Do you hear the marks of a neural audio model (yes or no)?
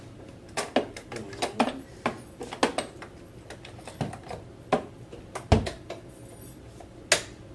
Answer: no